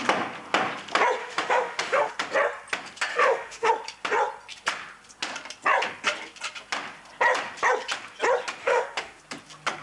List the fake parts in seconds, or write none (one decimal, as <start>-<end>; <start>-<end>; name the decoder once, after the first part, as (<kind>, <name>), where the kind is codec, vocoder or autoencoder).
1.2-2.1 (autoencoder, DAC-VAE); 3.1-3.7; 8.6-9.2